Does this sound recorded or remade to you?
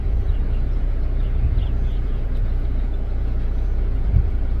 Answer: remade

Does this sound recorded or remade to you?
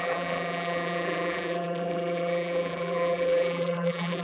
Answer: remade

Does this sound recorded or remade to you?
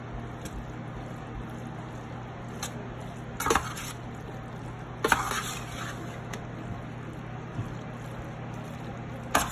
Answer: recorded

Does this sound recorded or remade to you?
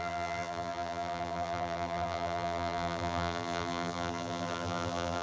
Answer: remade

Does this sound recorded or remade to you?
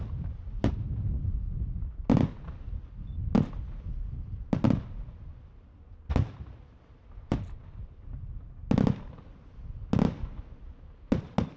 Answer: recorded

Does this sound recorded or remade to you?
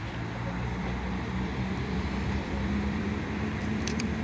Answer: remade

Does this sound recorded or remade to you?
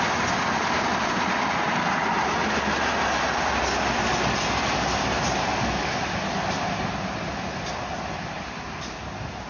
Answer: recorded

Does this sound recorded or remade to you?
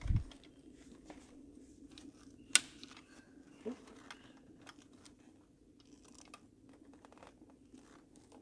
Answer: recorded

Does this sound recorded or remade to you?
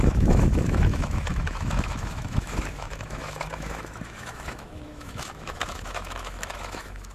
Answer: remade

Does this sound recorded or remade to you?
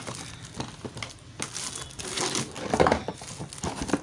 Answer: recorded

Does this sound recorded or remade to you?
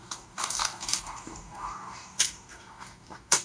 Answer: remade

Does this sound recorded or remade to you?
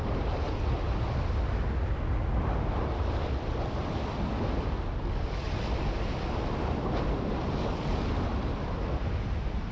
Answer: recorded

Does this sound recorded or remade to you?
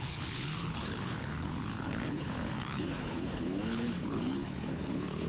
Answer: remade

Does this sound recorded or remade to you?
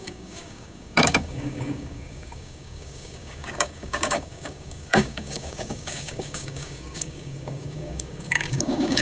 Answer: remade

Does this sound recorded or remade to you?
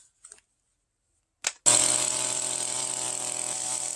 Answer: recorded